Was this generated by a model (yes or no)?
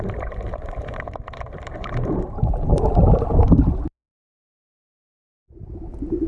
yes